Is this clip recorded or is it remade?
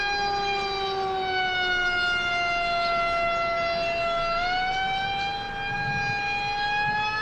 recorded